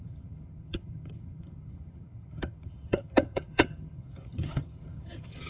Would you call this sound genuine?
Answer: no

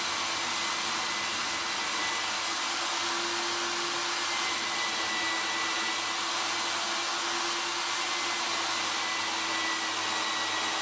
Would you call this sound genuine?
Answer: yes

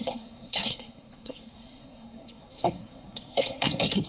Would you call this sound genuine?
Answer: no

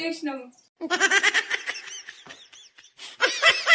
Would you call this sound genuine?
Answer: yes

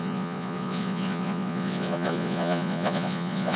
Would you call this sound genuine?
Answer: no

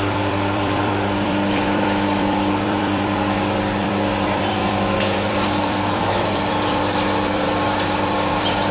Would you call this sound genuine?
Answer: no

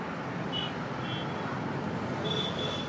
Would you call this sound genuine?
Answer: yes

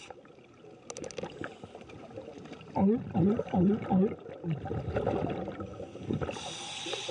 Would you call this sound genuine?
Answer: yes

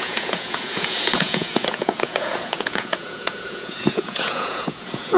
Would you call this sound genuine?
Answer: no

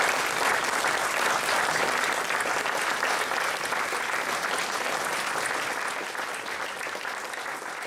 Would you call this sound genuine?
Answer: yes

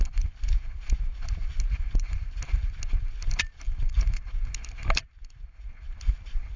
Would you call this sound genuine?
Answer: yes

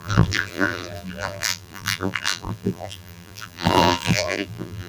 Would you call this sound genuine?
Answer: no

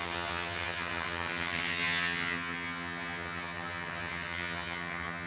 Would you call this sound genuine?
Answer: no